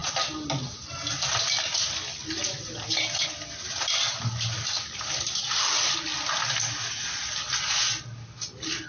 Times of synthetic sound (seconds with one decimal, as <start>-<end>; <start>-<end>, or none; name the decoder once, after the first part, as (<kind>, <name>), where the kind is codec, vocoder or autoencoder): none